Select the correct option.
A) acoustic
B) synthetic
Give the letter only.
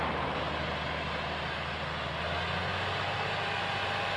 A